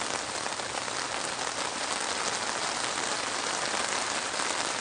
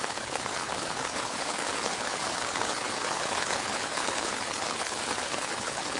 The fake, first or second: second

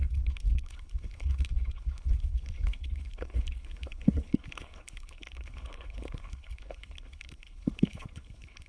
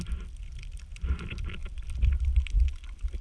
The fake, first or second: first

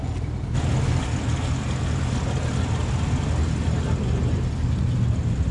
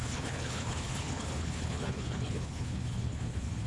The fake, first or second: second